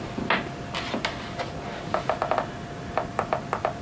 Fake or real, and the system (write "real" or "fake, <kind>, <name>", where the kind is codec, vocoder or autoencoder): real